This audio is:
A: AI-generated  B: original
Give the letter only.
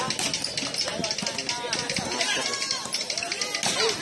B